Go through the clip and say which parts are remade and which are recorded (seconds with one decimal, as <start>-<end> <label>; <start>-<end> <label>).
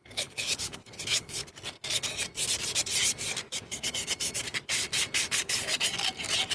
0.0-1.4 remade; 1.4-5.3 recorded; 5.3-5.7 remade; 5.7-6.5 recorded